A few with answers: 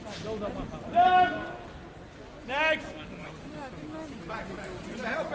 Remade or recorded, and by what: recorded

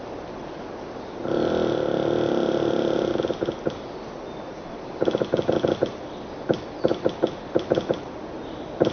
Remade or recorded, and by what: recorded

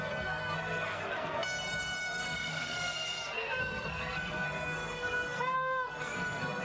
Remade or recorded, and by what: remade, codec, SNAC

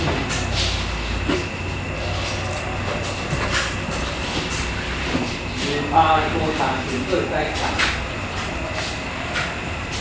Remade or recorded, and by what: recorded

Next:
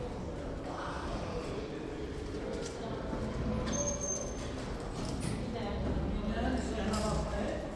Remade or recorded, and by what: recorded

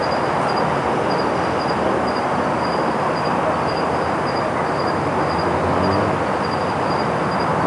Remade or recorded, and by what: recorded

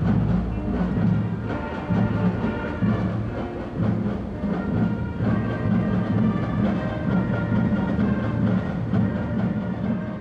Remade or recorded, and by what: recorded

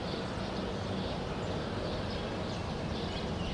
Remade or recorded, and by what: recorded